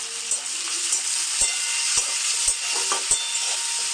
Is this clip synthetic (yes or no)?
no